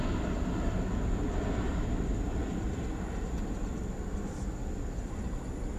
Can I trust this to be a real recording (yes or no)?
yes